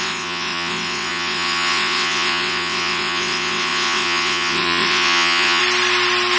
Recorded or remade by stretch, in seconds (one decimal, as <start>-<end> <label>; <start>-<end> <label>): 0.0-5.6 remade; 5.6-6.4 recorded